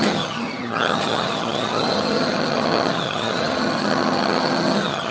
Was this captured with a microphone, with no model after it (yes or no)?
no